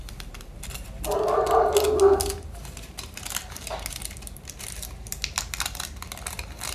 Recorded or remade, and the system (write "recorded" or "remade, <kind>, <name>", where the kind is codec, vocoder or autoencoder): recorded